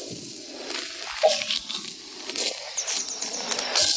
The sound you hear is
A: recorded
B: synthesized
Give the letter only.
A